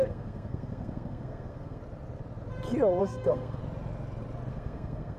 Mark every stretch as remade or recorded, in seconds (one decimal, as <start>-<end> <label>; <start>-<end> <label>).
0.0-1.8 remade; 1.8-3.0 recorded; 3.0-3.6 remade; 3.6-4.5 recorded; 4.5-5.2 remade

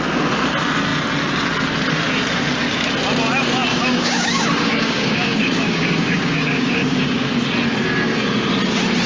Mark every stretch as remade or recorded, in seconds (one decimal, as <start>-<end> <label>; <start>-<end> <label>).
0.0-3.7 recorded; 3.7-7.3 remade; 7.3-9.1 recorded

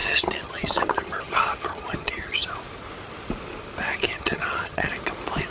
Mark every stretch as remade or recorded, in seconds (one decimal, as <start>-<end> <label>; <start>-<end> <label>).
0.0-2.5 remade; 2.5-3.9 recorded; 3.9-4.9 remade; 4.9-5.5 recorded